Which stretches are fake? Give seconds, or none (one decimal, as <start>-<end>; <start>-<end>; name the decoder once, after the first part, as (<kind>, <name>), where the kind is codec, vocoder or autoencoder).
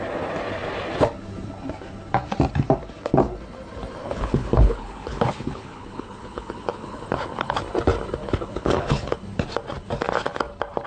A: 4.0-7.6 (codec, HILCodec); 8.2-9.2